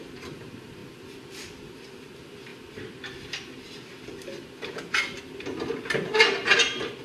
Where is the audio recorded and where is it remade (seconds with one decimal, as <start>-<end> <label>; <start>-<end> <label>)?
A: 0.0-7.0 recorded